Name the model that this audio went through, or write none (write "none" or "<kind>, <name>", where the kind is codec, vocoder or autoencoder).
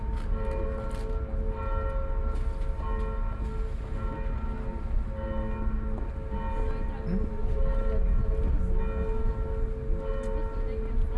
none